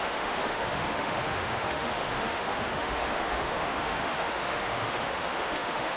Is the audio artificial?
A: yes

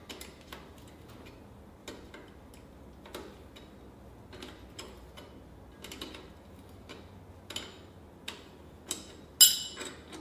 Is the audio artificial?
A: no